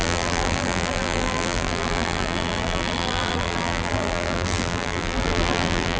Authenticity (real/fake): fake